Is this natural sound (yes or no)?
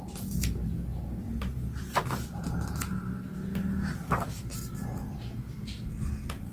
yes